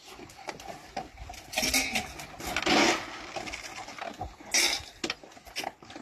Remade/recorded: recorded